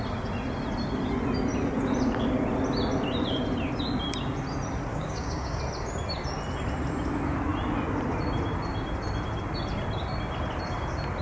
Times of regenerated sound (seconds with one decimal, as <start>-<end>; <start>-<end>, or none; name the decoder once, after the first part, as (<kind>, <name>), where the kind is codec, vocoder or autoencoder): 4.9-5.6 (codec, DAC)